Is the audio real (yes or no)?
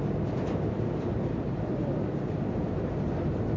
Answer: yes